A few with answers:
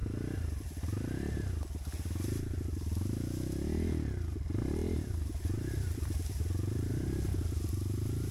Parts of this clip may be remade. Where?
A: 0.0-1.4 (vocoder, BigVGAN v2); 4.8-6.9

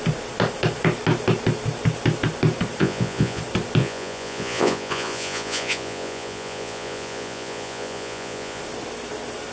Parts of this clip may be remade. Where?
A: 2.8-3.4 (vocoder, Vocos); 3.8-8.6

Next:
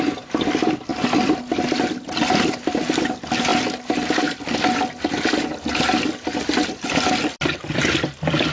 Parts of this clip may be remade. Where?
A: none

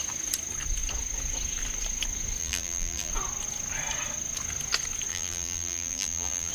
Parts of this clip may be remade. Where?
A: 2.4-3.1 (vocoder, BigVGAN v2); 5.1-6.5

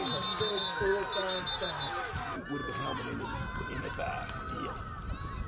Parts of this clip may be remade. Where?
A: none

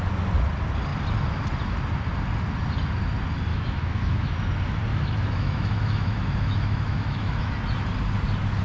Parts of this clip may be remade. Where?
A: 3.5-4.4 (autoencoder, DAC-VAE); 4.9-7.5

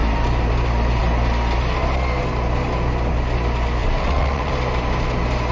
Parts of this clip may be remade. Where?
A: 3.8-4.5 (vocoder, WaveNeXt)

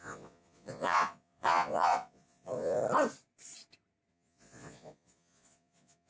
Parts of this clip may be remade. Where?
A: 0.0-2.8 (vocoder, Vocos); 4.1-6.1